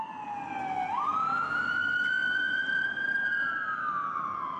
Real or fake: real